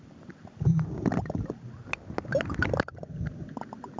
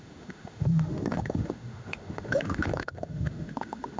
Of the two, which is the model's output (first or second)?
second